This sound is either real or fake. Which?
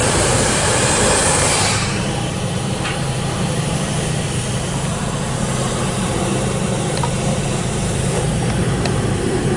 fake